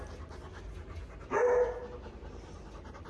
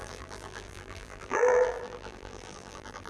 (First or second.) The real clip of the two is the first